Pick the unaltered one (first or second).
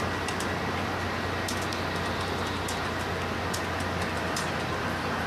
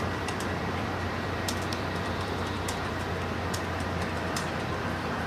first